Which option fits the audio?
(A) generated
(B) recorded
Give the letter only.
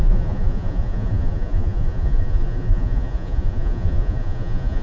A